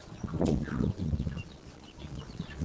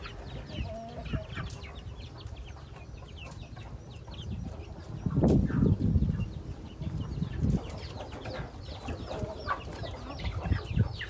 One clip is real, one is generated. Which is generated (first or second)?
first